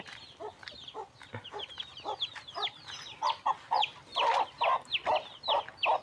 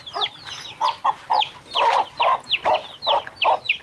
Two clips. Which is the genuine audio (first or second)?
second